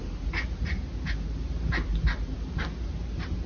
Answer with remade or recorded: recorded